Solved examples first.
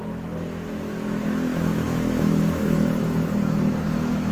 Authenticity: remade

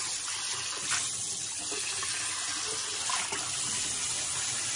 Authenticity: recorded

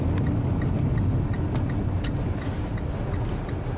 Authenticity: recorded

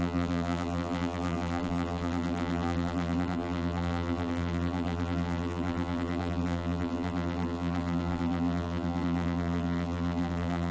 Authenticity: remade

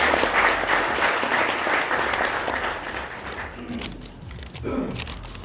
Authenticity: recorded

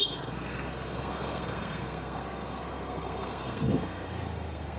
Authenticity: remade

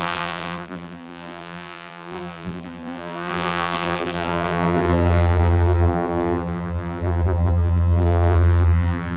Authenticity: remade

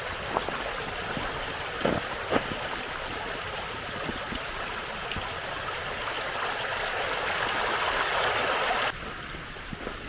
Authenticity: recorded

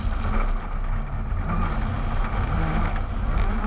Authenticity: recorded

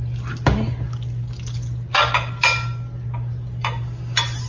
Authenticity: recorded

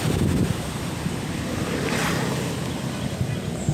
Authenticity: recorded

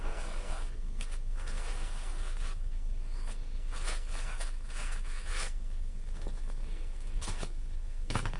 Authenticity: remade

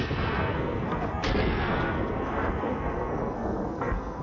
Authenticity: remade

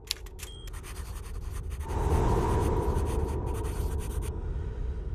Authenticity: recorded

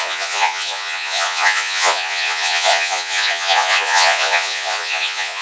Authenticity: remade